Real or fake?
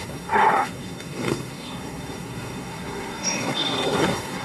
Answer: fake